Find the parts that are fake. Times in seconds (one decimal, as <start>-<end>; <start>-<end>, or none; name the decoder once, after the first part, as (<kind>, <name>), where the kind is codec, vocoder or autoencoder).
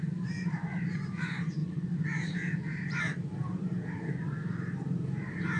0.0-5.6 (vocoder, BigVGAN v2)